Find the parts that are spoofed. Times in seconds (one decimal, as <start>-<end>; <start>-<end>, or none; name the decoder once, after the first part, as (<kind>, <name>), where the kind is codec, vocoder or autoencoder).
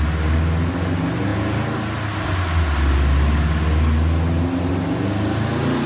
none